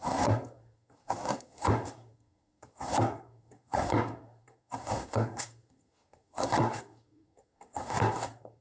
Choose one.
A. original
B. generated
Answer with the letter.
B